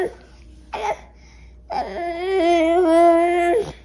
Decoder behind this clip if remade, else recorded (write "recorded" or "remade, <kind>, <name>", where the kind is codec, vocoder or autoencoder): recorded